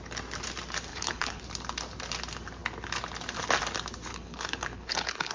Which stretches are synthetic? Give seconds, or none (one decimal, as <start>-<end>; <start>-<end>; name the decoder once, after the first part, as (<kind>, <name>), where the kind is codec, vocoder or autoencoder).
0.9-1.4 (codec, HILCodec); 4.1-5.3